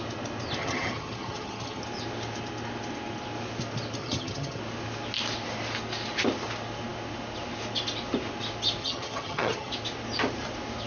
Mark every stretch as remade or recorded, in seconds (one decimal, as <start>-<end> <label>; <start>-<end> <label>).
0.0-0.6 recorded; 0.6-1.8 remade; 1.8-4.0 recorded; 4.0-4.6 remade; 4.6-8.8 recorded; 8.8-9.7 remade; 9.7-10.9 recorded